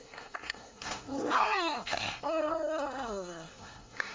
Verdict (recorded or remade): remade